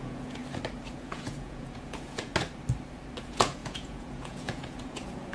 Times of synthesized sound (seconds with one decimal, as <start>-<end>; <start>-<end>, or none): 0.0-0.4; 0.9-2.3; 3.2-5.3